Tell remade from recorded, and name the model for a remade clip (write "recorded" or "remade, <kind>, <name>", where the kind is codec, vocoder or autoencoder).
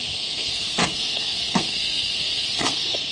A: remade, codec, SNAC